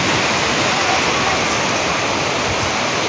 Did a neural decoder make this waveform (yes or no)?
no